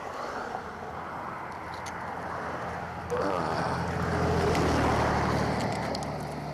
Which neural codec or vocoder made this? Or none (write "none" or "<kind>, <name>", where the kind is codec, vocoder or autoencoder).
none